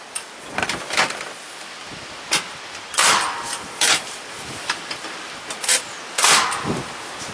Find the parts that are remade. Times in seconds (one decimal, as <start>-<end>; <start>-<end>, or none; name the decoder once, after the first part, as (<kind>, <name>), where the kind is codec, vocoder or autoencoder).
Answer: 1.0-2.2 (vocoder, BigVGAN v2); 3.0-6.0